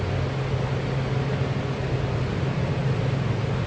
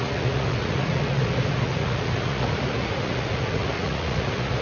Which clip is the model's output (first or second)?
second